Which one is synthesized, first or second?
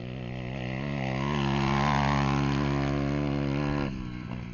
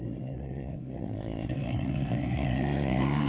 second